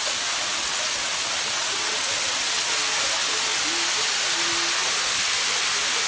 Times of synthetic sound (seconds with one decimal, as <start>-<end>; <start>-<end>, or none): 0.6-2.6